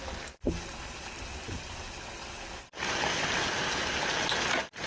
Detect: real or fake real